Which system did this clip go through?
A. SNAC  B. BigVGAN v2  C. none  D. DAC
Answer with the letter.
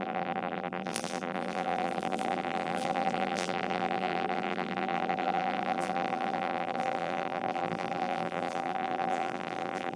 B